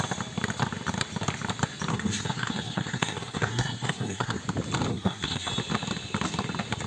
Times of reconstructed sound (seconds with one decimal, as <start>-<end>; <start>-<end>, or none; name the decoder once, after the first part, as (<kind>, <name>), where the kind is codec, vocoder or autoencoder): 1.9-4.4 (codec, SNAC); 4.9-5.5